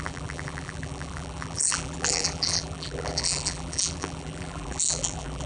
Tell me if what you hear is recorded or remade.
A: remade